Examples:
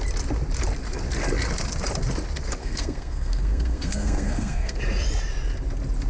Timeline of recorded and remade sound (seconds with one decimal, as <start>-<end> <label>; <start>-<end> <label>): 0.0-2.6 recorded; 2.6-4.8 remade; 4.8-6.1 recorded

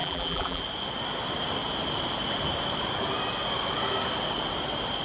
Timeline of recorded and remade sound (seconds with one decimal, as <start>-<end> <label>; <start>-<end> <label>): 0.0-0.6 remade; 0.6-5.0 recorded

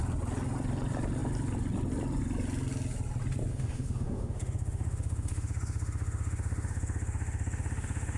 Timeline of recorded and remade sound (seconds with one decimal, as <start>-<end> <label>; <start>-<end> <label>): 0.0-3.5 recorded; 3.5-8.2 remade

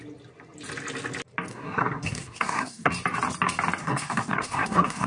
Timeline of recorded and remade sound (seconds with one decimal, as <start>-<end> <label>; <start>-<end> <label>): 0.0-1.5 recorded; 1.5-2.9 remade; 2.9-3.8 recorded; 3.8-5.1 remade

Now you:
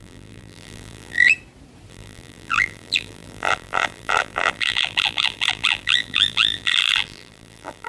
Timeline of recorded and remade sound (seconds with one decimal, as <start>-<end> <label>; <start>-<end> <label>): 0.0-1.3 remade; 1.3-1.9 recorded; 1.9-7.9 remade